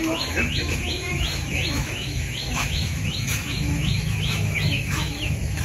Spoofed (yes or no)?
yes